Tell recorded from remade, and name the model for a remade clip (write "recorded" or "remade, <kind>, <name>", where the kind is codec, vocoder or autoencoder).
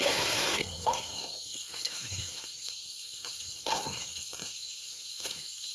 remade, codec, SNAC